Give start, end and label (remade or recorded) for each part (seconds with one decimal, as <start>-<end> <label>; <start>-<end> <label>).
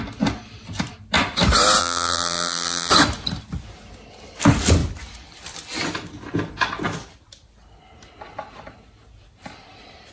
0.0-1.8 recorded; 1.8-2.9 remade; 2.9-10.1 recorded